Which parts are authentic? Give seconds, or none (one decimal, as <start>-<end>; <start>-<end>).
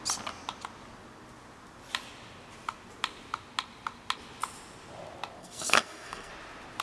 0.0-5.4; 6.3-6.8